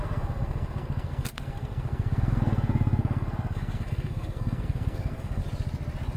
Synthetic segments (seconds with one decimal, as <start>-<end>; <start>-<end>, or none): 0.0-5.4